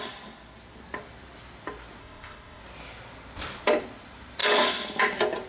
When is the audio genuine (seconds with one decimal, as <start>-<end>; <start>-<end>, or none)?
0.0-2.0; 2.6-5.5